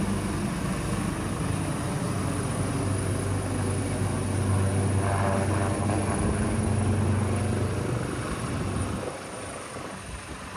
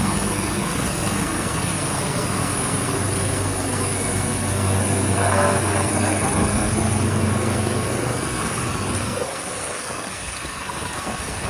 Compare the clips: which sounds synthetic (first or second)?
second